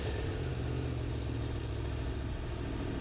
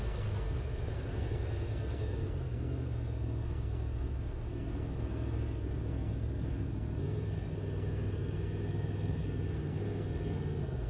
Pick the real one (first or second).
first